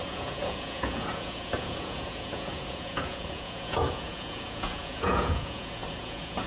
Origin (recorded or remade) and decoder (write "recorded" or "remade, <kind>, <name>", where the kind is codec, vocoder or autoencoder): remade, vocoder, Vocos